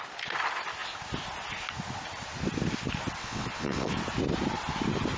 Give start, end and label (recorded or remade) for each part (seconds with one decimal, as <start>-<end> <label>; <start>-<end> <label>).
0.0-3.2 recorded; 3.2-4.0 remade; 4.0-5.2 recorded